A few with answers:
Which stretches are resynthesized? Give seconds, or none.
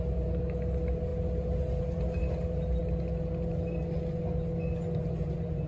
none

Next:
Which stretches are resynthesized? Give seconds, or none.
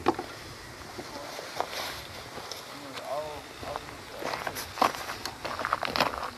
none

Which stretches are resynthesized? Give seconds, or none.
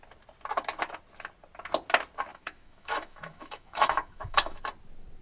2.3-4.6 (autoencoder, DAC-VAE)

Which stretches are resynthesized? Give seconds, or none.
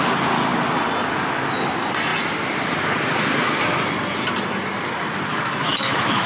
5.3-6.3 (autoencoder, DAC-VAE)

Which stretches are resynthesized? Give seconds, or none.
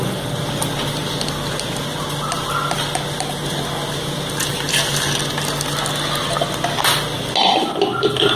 none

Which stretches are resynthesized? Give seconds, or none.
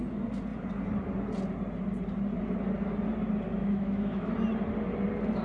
3.6-4.3 (autoencoder, DAC-VAE)